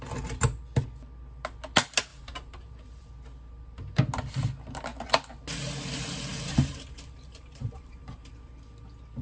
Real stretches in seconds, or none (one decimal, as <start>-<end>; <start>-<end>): 0.0-2.1; 3.1-6.3; 8.3-9.2